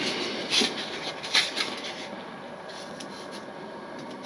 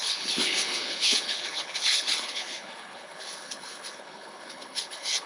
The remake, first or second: second